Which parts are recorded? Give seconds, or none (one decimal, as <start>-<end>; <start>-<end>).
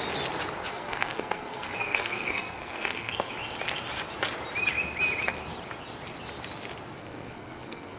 0.0-0.7; 3.3-7.0